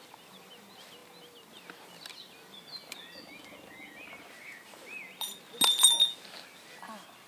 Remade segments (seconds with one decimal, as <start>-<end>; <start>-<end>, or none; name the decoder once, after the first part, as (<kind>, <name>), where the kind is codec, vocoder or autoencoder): none